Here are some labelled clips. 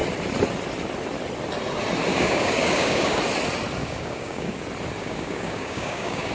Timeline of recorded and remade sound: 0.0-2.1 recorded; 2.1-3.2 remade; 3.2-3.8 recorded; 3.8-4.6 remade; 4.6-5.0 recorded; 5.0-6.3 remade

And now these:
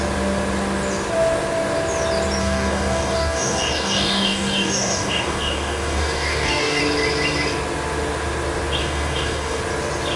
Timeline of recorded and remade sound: 0.0-2.4 recorded; 2.4-6.8 remade; 6.8-8.8 recorded; 8.8-9.6 remade; 9.6-10.2 recorded

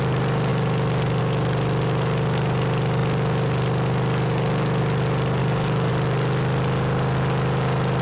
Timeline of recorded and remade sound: 0.0-5.4 recorded; 5.4-5.9 remade; 5.9-8.0 recorded